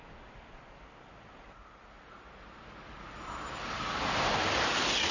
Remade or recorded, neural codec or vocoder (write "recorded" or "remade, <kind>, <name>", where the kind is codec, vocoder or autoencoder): recorded